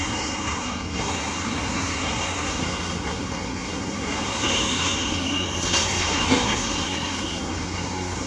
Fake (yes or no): yes